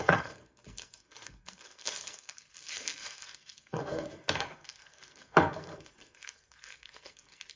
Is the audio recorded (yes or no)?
no